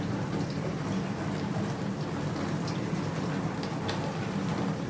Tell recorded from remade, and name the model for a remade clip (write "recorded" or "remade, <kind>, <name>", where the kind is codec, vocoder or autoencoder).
recorded